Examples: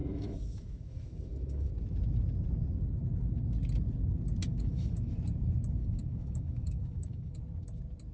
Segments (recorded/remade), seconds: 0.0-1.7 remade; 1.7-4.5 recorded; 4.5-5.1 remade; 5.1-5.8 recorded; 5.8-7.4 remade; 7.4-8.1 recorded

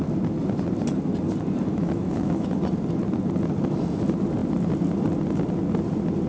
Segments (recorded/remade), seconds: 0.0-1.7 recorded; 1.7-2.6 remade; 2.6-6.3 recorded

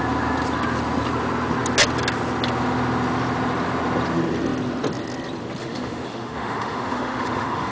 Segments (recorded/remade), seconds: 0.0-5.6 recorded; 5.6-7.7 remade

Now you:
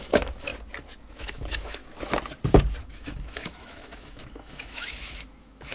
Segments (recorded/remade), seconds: 0.0-0.5 remade; 0.5-1.1 recorded; 1.1-1.8 remade; 1.8-2.8 recorded; 2.8-5.7 remade